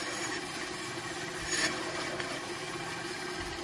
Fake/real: real